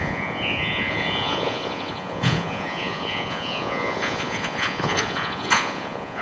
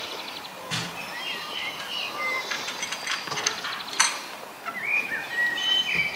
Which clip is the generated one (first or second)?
first